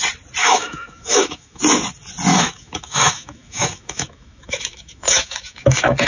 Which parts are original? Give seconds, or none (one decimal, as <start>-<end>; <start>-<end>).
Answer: 0.0-0.4; 1.6-2.3